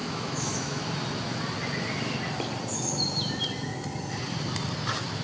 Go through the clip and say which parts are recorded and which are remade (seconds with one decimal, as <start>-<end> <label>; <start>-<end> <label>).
0.0-0.8 remade; 0.8-5.2 recorded

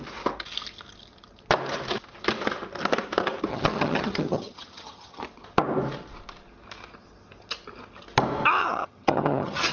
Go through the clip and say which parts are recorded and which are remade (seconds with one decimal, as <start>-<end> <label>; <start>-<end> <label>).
0.0-3.5 recorded; 3.5-5.2 remade; 5.2-8.6 recorded; 8.6-9.7 remade